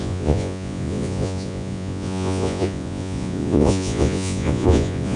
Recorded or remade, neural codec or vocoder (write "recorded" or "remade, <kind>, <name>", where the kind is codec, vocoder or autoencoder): remade, vocoder, Vocos